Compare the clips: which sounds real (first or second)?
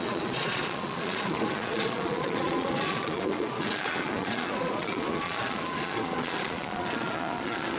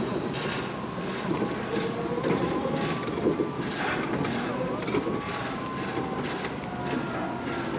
second